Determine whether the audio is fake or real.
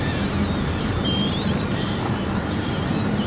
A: real